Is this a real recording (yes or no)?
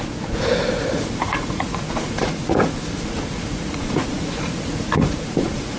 no